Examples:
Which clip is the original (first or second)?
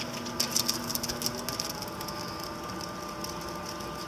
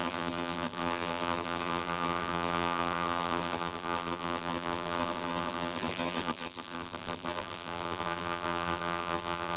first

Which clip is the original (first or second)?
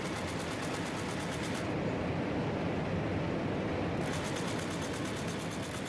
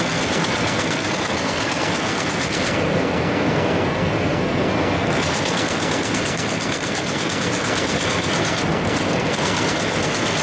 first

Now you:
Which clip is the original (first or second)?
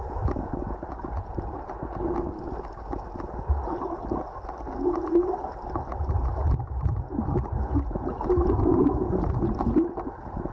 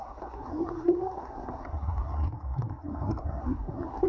first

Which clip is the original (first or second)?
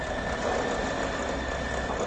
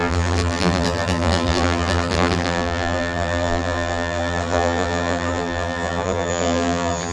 first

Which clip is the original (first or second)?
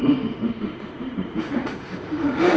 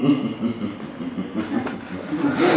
second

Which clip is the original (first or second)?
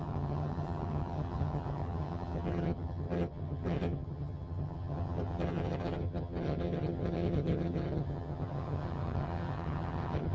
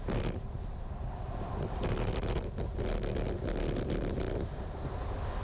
second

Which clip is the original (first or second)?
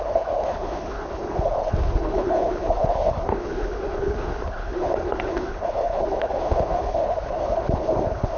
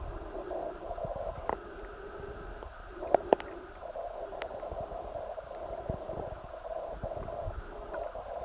second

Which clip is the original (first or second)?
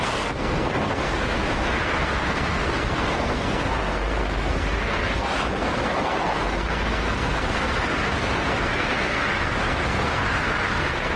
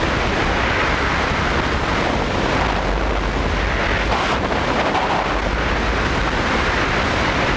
second